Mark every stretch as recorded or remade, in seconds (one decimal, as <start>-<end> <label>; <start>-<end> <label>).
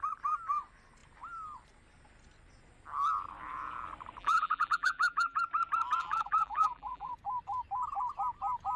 0.0-4.2 recorded; 4.2-5.4 remade; 5.4-6.0 recorded; 6.0-7.1 remade; 7.1-8.8 recorded